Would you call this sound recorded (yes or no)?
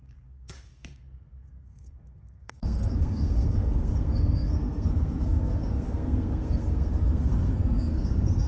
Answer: no